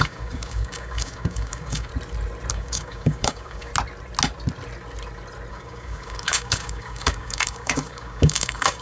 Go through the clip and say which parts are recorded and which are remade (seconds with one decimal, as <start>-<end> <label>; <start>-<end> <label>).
0.0-1.9 remade; 1.9-2.5 recorded; 2.5-3.7 remade; 3.7-5.5 recorded; 5.5-8.8 remade